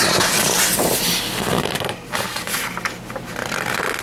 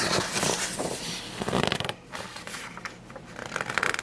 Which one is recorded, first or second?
first